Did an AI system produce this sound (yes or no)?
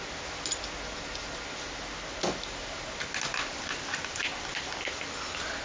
no